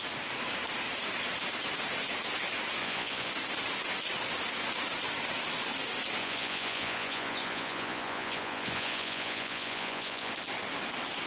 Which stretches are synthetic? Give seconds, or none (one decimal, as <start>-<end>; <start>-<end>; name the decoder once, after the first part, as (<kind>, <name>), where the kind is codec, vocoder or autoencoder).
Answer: 2.8-3.3 (vocoder, Vocos); 6.2-10.3